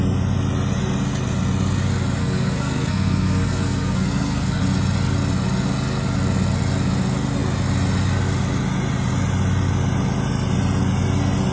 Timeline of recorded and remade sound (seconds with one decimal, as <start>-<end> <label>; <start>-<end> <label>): 0.0-2.2 recorded; 2.2-4.6 remade; 4.6-11.5 recorded